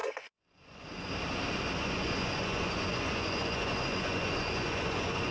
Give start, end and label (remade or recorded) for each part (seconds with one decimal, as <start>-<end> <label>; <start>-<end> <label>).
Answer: 0.0-1.1 remade; 1.1-1.8 recorded; 1.8-5.3 remade